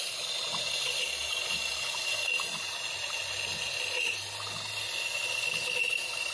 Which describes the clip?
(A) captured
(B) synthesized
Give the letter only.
A